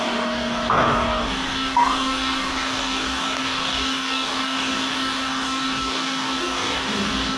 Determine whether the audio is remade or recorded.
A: remade